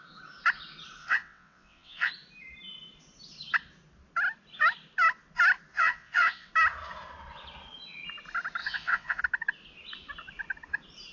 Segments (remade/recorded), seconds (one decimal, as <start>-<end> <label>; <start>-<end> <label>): 0.0-1.0 recorded; 1.0-2.1 remade; 2.1-5.7 recorded; 5.7-6.5 remade; 6.5-8.6 recorded; 8.6-9.2 remade; 9.2-11.1 recorded